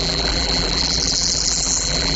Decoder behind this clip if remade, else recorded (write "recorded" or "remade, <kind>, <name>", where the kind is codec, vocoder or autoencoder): remade, vocoder, BigVGAN v2